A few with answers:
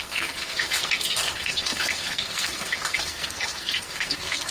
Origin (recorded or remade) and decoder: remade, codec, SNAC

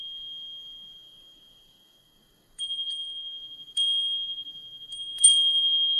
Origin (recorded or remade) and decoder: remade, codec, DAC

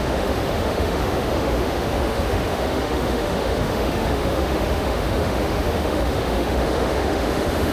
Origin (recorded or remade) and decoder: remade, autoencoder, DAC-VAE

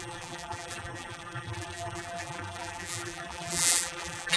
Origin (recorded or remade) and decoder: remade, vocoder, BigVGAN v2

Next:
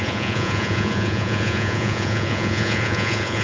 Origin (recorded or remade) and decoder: remade, vocoder, Vocos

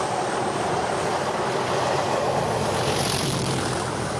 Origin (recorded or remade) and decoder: recorded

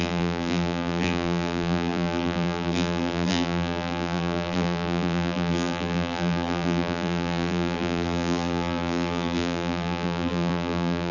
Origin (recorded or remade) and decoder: remade, vocoder, BigVGAN v2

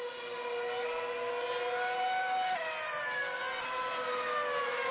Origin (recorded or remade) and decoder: recorded